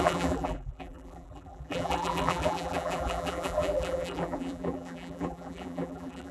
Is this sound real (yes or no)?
no